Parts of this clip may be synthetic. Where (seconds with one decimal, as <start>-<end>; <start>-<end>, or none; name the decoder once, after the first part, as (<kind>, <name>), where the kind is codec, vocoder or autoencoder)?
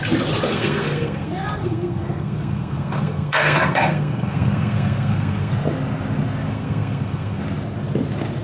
0.5-5.5 (codec, SNAC); 6.5-7.4